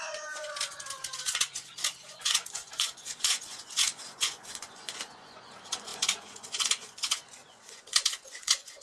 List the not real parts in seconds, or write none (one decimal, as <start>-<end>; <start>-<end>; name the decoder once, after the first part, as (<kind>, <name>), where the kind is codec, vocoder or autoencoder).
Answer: 0.0-8.8 (vocoder, Vocos)